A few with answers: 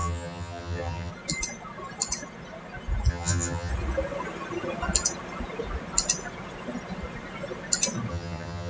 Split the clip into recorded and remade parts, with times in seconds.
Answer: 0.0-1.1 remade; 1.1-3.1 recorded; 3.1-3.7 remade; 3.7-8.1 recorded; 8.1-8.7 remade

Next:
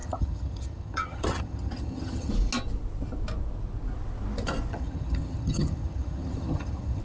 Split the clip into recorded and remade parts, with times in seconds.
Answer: 0.0-2.3 remade; 2.3-4.7 recorded; 4.7-7.0 remade

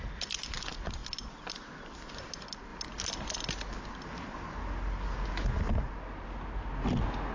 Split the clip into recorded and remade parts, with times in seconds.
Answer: 0.0-7.3 recorded

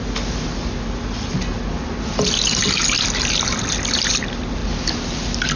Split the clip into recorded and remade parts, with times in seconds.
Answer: 0.0-5.6 recorded